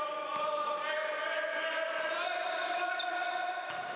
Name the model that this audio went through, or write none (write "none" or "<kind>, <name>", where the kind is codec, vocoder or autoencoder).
none